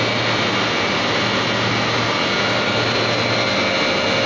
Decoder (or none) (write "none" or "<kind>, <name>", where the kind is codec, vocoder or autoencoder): none